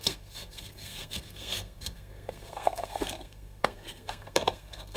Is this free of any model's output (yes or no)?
no